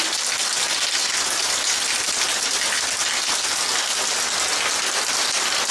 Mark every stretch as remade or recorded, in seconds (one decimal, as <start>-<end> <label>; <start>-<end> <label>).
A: 0.0-5.7 recorded